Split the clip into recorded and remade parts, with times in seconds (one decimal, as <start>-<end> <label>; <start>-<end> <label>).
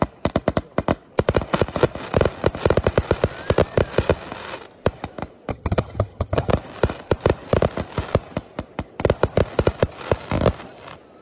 0.0-5.5 recorded; 5.5-6.5 remade; 6.5-11.2 recorded